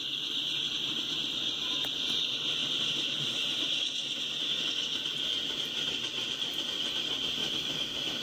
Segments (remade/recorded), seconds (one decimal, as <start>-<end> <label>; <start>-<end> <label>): 0.0-7.4 recorded; 7.4-8.2 remade